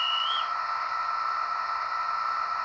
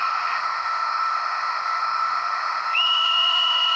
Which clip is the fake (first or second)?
second